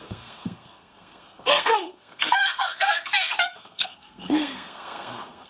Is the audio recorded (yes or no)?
no